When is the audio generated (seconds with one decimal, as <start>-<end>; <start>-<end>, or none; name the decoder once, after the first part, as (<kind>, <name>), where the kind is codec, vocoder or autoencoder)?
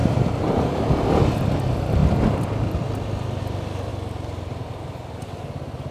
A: 0.0-1.2 (vocoder, BigVGAN v2); 3.9-5.2